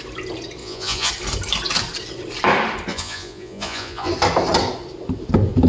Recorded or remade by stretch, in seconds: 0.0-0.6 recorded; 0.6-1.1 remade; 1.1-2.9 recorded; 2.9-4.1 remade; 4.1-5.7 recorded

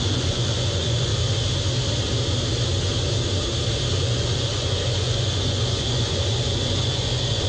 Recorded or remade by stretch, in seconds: 0.0-1.1 remade; 1.1-4.0 recorded; 4.0-7.5 remade

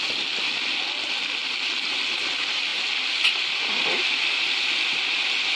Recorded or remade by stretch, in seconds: 0.0-5.6 recorded

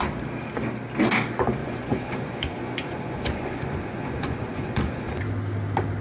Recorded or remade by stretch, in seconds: 0.0-1.6 recorded; 1.6-5.2 remade; 5.2-6.0 recorded